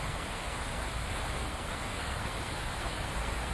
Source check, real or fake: fake